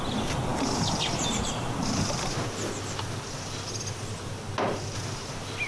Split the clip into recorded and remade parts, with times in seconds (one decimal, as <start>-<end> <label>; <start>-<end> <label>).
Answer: 0.0-5.7 recorded